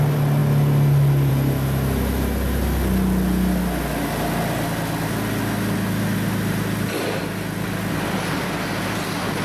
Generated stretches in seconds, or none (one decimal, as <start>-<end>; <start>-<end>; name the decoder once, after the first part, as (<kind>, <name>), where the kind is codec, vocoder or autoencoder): none